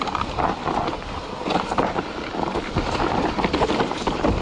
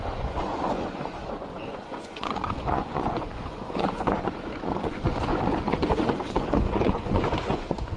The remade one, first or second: second